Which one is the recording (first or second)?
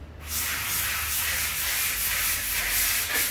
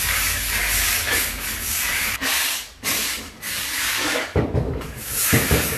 first